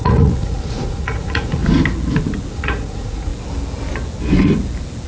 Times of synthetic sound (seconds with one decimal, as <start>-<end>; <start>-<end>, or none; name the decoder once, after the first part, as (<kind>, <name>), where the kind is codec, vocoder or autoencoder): 0.0-1.6 (vocoder, Vocos); 2.5-3.3